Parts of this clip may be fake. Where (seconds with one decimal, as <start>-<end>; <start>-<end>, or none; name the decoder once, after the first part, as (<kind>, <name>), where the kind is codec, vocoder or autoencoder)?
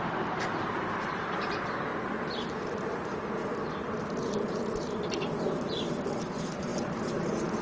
0.0-1.9 (vocoder, BigVGAN v2); 2.9-7.6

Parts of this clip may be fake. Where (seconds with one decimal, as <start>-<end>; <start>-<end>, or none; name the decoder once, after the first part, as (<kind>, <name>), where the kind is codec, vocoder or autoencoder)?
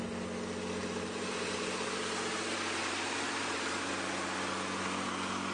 0.8-3.9 (vocoder, BigVGAN v2)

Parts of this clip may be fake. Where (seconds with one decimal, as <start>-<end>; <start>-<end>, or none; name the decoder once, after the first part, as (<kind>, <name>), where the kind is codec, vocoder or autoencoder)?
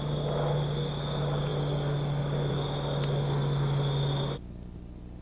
none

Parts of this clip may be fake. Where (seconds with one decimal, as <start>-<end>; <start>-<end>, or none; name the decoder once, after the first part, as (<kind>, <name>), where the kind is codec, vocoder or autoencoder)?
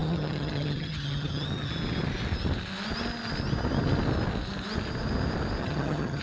0.0-1.7 (vocoder, HiFi-GAN); 5.6-6.2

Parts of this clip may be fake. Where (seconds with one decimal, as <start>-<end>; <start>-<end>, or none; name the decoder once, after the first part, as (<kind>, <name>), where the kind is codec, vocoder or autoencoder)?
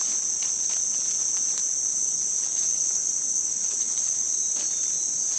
1.9-4.4 (codec, HILCodec)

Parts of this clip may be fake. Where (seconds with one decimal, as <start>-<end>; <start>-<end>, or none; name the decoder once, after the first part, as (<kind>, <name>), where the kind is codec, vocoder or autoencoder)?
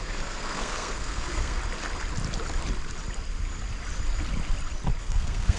0.0-1.6 (codec, SNAC); 5.0-5.6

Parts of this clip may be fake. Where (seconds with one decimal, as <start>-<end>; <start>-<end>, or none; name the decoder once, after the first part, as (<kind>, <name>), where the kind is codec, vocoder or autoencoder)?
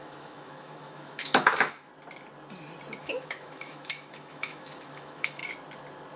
0.0-1.9 (autoencoder, DAC-VAE); 3.0-5.4